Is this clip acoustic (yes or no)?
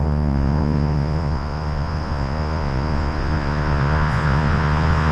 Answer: no